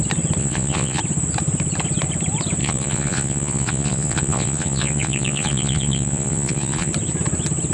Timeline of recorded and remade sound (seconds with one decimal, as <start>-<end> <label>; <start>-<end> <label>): 0.0-0.4 recorded; 0.4-1.0 remade; 1.0-2.6 recorded; 2.6-6.9 remade; 6.9-7.7 recorded